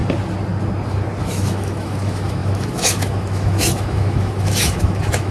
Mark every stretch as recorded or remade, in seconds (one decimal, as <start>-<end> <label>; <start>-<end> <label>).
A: 0.0-1.2 recorded; 1.2-5.3 remade